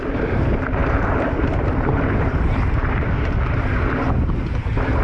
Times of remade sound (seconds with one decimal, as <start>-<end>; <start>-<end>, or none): 0.8-3.8